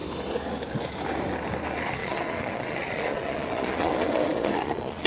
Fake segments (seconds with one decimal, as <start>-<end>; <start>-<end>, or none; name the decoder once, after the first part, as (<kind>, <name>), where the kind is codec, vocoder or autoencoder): 2.0-5.1 (vocoder, Vocos)